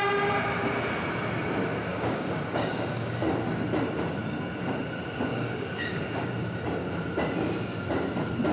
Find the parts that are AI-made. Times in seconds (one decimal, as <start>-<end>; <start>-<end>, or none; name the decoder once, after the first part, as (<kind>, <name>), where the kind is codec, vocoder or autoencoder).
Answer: 1.9-3.2 (codec, DAC); 5.3-6.3